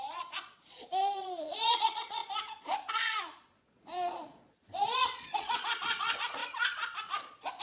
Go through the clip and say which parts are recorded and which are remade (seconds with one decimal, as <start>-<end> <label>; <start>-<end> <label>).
0.0-7.6 remade

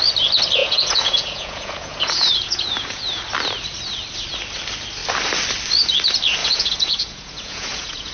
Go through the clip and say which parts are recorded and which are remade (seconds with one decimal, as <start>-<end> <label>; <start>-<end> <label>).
0.0-0.6 recorded; 0.6-3.2 remade; 3.2-6.4 recorded; 6.4-8.1 remade

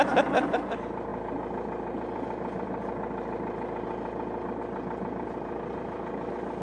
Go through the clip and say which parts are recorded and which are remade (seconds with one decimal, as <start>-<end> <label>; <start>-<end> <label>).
0.0-6.6 recorded

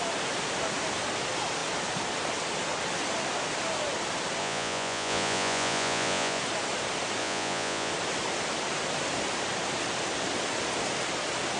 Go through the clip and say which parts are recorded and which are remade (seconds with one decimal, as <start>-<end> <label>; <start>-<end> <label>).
0.0-4.4 recorded; 4.4-6.4 remade; 6.4-7.2 recorded; 7.2-7.9 remade; 7.9-11.6 recorded

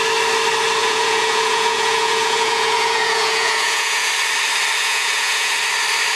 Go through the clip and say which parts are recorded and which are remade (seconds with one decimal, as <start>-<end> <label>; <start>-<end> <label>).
0.0-0.8 recorded; 0.8-4.1 remade; 4.1-4.8 recorded; 4.8-5.5 remade; 5.5-6.2 recorded